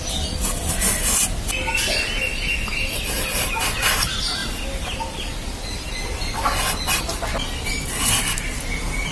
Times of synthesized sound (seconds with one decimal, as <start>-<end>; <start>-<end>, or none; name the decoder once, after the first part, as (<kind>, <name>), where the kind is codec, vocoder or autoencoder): none

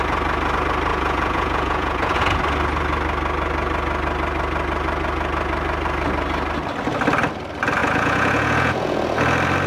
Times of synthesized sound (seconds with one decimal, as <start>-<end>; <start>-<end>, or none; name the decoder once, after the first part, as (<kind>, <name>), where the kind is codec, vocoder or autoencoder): 0.9-2.4 (vocoder, Vocos); 7.8-9.0

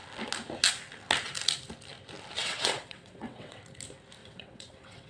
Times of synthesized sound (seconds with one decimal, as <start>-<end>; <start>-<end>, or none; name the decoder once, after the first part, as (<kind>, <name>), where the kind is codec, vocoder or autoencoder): 2.4-3.6 (vocoder, WaveNeXt); 4.2-5.1

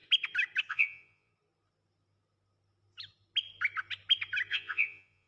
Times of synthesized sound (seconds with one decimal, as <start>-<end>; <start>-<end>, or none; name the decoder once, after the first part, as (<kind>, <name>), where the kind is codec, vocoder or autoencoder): 0.7-1.3 (vocoder, Vocos); 4.5-5.3

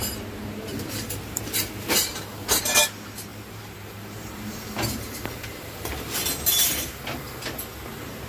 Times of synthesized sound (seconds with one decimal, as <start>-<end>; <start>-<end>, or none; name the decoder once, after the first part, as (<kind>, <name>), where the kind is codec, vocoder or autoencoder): 0.7-2.6 (vocoder, BigVGAN v2); 3.3-7.4